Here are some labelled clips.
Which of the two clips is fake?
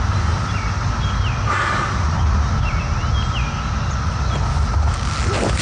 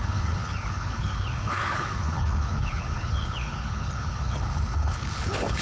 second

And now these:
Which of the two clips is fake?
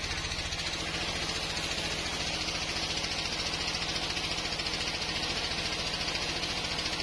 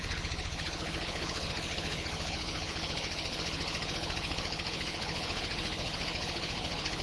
second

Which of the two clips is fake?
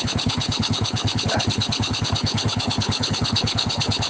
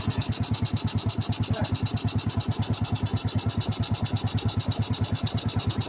first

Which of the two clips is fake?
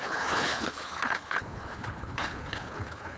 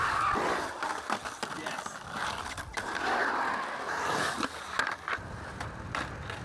first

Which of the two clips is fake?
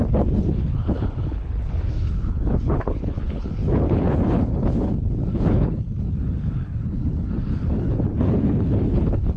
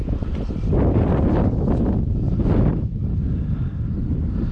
first